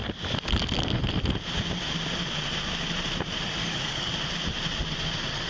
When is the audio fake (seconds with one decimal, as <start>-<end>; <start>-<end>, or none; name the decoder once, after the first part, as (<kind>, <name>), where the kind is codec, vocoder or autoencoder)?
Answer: 3.6-4.1 (codec, DAC)